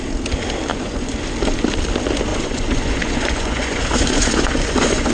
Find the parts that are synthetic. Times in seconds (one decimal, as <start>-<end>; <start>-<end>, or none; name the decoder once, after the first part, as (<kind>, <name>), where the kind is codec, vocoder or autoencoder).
0.7-1.3 (vocoder, Vocos); 2.3-5.1